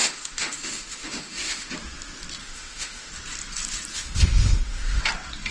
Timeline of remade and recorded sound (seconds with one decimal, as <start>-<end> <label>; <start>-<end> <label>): 0.0-1.7 remade; 1.7-2.4 recorded; 2.4-3.1 remade; 3.1-3.9 recorded; 3.9-5.0 remade; 5.0-5.5 recorded